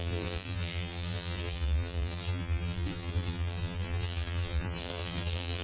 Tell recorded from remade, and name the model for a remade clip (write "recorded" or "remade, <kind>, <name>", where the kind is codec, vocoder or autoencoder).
remade, vocoder, BigVGAN v2